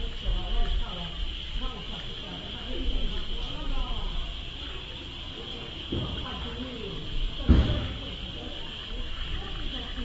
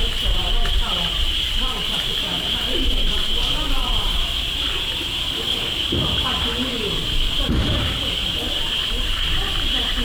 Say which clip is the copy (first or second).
second